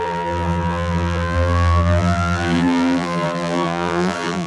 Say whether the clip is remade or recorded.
remade